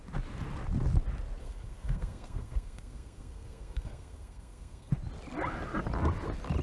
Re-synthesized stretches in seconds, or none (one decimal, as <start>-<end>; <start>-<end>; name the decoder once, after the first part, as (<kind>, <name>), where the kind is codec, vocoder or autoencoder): 1.4-4.9 (codec, SNAC)